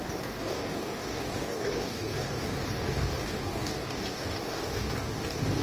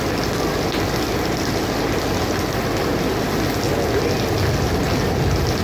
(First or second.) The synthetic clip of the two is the first